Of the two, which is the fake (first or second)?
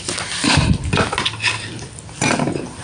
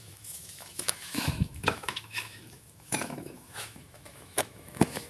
second